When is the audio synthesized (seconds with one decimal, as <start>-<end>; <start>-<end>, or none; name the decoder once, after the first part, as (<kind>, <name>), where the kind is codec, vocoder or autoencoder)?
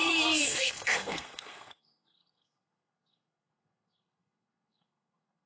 0.0-5.5 (codec, SNAC)